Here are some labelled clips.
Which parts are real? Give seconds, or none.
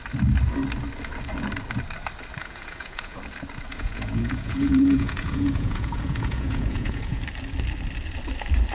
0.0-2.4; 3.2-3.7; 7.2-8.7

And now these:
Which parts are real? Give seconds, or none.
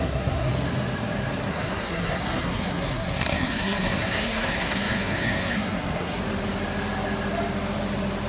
0.5-1.5; 6.2-8.3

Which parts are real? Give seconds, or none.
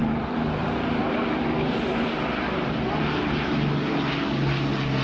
3.0-5.0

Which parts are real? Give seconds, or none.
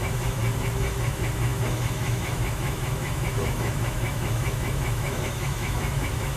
0.4-1.0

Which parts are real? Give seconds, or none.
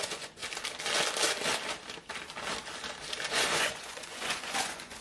0.4-3.3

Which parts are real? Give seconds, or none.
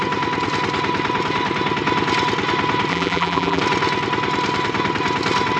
0.0-2.9; 3.6-5.6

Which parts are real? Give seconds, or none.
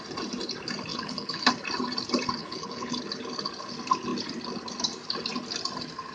0.0-0.9; 1.5-2.4; 3.0-6.1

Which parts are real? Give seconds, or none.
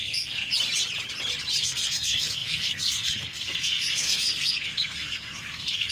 0.5-1.6